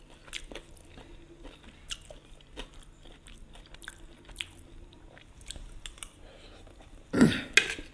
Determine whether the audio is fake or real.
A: real